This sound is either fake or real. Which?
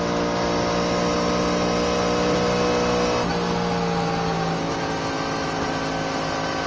real